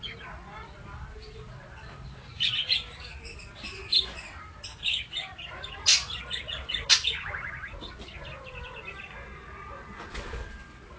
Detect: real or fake real